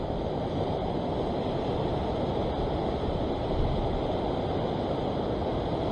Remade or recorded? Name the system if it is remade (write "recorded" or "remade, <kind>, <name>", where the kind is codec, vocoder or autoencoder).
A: recorded